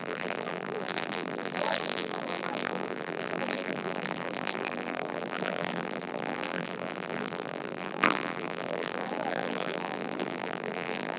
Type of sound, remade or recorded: remade